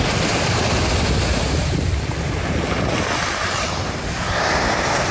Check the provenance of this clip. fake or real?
real